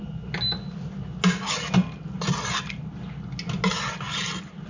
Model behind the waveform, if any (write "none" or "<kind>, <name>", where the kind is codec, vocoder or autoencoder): none